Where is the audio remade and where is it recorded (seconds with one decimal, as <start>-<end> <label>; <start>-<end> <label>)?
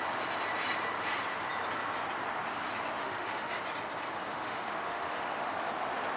0.0-3.0 recorded; 3.0-3.6 remade; 3.6-4.3 recorded; 4.3-5.5 remade; 5.5-6.2 recorded